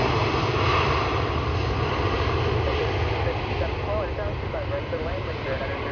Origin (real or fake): real